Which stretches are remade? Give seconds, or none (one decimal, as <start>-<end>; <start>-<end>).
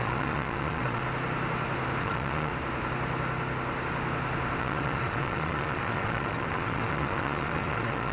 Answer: 0.0-1.0; 2.0-2.5; 4.6-8.1